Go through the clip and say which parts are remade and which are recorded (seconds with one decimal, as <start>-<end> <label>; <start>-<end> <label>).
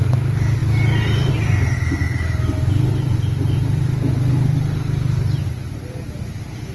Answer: 0.0-6.7 recorded